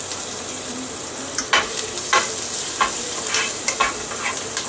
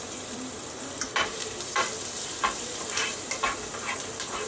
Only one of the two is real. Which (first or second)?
first